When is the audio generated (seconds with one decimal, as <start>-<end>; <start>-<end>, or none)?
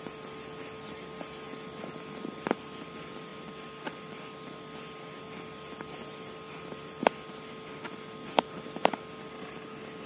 none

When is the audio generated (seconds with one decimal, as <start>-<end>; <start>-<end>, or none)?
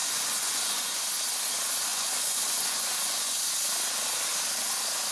0.0-1.1; 1.9-3.5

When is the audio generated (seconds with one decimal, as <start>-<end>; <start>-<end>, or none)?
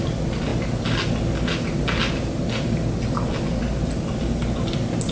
none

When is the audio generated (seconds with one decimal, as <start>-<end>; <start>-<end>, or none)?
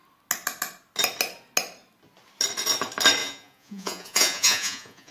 3.2-5.1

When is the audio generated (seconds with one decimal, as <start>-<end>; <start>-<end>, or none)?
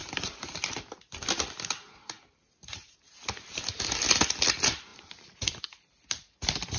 0.0-1.0; 4.9-5.6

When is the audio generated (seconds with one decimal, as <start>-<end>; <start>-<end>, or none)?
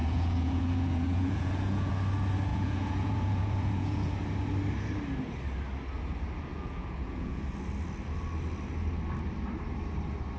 0.0-1.9; 2.5-4.1; 6.5-7.4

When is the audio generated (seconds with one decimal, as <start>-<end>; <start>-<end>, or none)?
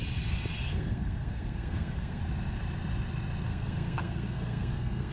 0.7-2.2; 3.5-5.1